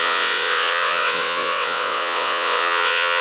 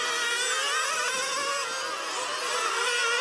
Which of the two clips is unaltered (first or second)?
second